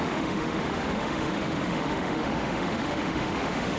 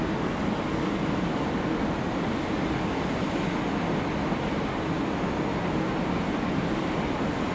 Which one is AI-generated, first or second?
first